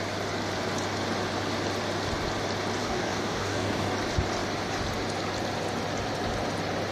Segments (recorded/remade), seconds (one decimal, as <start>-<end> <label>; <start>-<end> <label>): 0.0-2.8 recorded; 2.8-3.9 remade; 3.9-6.9 recorded